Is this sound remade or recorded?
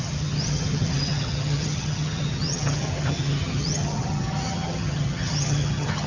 remade